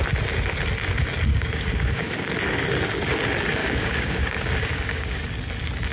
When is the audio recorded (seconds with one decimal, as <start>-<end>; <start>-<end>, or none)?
0.0-1.3; 2.3-3.6; 5.2-5.9